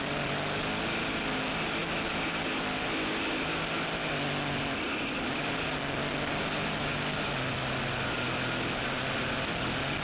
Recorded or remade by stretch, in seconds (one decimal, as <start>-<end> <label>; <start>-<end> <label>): 0.0-10.0 recorded